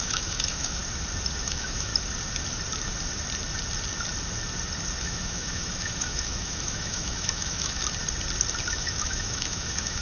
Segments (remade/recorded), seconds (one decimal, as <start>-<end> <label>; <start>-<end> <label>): 0.0-0.8 remade; 0.8-1.4 recorded; 1.4-1.9 remade; 1.9-5.0 recorded; 5.0-7.8 remade; 7.8-8.7 recorded; 8.7-10.0 remade